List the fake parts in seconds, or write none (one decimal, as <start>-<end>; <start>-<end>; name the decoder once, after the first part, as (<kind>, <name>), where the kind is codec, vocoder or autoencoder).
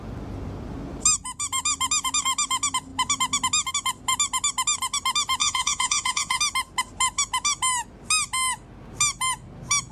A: 5.4-6.4 (vocoder, Vocos)